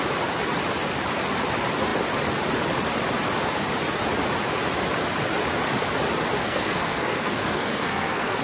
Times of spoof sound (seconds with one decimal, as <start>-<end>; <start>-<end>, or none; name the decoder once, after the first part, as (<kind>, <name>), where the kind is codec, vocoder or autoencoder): 6.4-8.4 (codec, SNAC)